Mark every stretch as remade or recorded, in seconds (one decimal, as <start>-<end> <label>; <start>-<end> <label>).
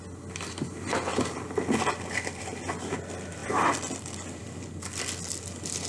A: 0.0-5.9 recorded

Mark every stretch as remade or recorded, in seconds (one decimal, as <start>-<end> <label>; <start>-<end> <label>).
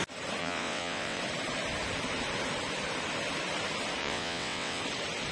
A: 0.0-0.4 recorded; 0.4-1.2 remade; 1.2-4.0 recorded; 4.0-4.8 remade; 4.8-5.3 recorded